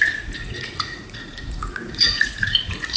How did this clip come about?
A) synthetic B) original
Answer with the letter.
A